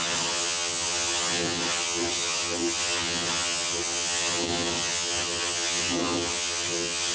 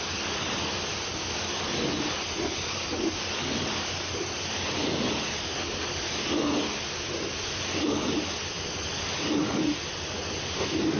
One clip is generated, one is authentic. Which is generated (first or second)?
first